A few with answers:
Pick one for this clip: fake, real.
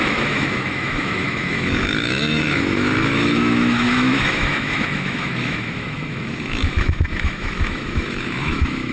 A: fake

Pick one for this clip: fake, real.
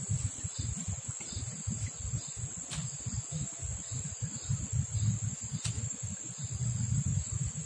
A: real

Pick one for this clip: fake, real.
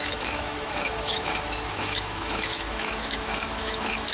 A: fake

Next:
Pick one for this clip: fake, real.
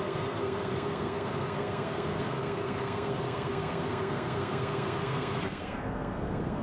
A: fake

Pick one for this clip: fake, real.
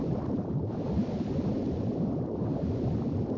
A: real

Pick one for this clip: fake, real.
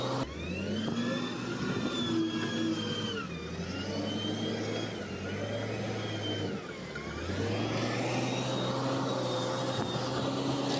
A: real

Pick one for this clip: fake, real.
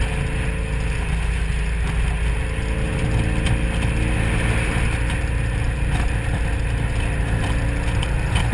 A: real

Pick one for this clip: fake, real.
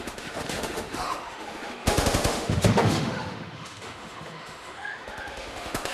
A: fake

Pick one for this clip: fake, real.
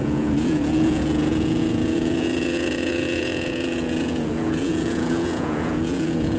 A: fake